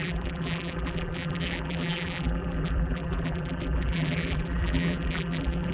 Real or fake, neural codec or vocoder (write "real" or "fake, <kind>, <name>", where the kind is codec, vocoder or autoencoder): fake, vocoder, BigVGAN v2